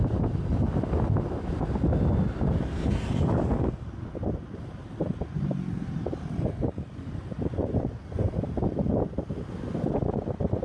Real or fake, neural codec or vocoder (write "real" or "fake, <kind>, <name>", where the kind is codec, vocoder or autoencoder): real